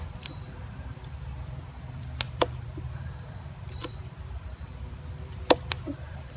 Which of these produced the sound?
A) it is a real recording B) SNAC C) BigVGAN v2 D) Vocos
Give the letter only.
C